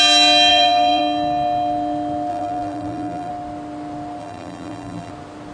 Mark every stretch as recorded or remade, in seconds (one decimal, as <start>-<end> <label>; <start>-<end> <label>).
0.0-0.5 recorded; 0.5-1.0 remade; 1.0-2.3 recorded; 2.3-3.3 remade; 3.3-4.2 recorded; 4.2-5.1 remade; 5.1-5.5 recorded